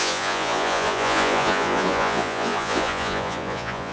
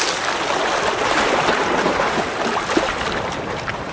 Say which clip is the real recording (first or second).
second